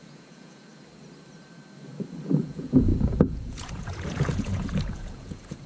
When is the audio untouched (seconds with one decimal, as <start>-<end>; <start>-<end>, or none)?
0.7-2.4